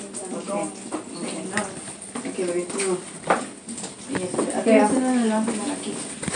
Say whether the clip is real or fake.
real